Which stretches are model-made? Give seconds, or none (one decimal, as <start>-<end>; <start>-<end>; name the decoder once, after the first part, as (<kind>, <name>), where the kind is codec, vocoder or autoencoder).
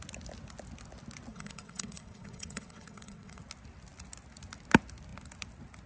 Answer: 1.3-3.4 (vocoder, WaveNeXt)